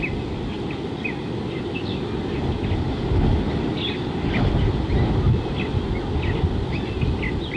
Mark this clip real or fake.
real